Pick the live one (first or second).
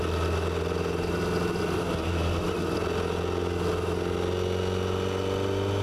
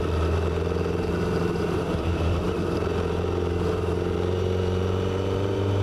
first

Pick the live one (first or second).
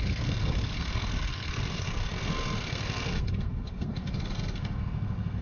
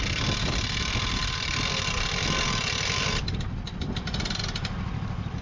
second